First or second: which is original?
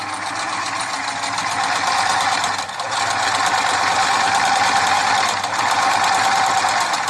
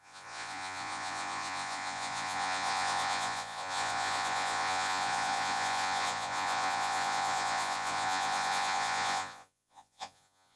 first